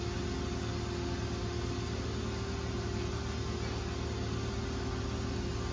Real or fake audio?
real